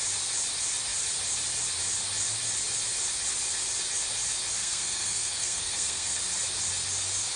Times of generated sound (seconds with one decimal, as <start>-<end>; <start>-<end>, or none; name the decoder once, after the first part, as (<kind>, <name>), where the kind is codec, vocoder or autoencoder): 4.6-6.2 (codec, SNAC)